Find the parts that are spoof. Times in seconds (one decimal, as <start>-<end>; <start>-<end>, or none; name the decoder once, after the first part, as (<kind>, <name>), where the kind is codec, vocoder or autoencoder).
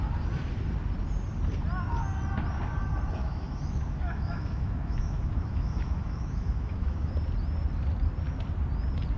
3.2-7.1 (autoencoder, DAC-VAE)